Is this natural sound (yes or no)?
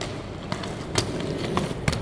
yes